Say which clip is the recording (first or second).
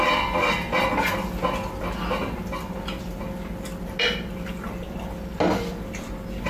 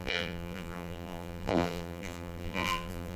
first